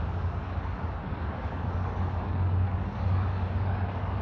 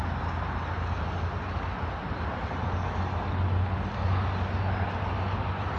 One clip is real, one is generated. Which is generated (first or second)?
first